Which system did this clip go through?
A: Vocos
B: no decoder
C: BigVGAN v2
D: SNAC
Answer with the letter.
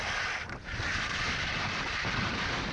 B